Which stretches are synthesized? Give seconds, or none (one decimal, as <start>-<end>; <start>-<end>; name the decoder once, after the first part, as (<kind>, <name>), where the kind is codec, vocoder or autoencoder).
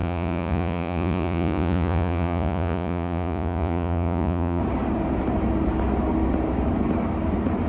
0.0-4.6 (vocoder, Vocos)